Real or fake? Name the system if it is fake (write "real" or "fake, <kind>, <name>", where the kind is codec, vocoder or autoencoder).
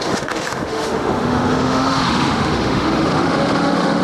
fake, autoencoder, DAC-VAE